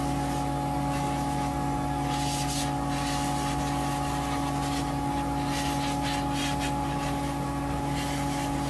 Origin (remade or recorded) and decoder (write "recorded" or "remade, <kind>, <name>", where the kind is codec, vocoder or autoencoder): recorded